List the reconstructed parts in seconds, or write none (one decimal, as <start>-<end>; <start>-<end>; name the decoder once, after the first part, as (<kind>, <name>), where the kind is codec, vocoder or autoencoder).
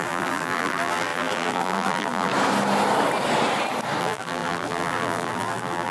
0.0-2.3 (vocoder, BigVGAN v2); 4.0-5.9